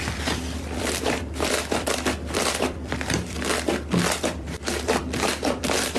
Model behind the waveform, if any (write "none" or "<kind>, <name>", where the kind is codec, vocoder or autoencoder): vocoder, BigVGAN v2